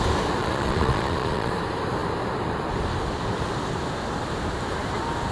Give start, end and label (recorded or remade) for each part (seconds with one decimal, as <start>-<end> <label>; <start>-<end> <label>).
0.0-0.4 recorded; 0.4-1.5 remade; 1.5-5.3 recorded